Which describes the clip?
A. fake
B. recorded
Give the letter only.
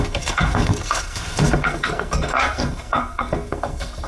A